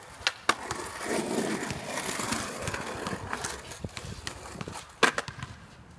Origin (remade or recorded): recorded